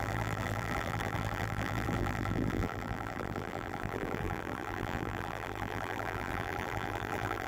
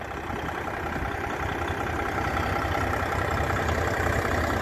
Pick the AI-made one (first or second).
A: first